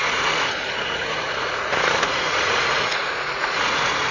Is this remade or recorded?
remade